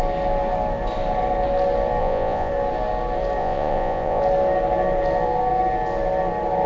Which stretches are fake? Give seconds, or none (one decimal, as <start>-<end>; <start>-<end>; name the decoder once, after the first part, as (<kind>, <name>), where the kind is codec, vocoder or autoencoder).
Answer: 2.0-2.5 (vocoder, Vocos); 3.4-4.2